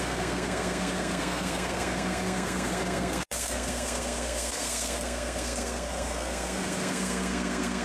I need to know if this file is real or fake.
fake